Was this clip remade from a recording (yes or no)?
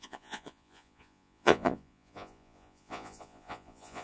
yes